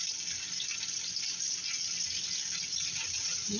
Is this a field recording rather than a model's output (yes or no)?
yes